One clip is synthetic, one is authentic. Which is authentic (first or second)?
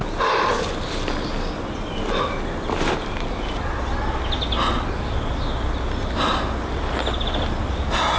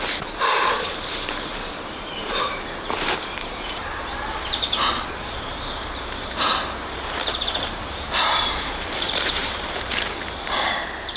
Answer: first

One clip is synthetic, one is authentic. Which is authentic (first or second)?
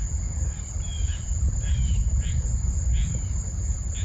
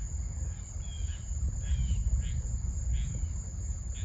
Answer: second